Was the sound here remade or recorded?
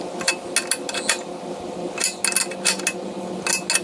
recorded